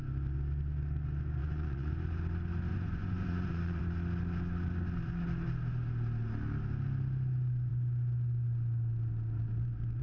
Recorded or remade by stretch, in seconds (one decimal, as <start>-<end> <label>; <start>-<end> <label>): 0.0-1.4 recorded; 1.4-1.9 remade; 1.9-2.7 recorded; 2.7-3.8 remade; 3.8-10.0 recorded